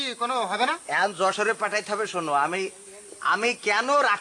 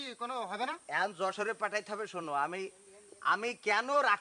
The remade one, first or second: second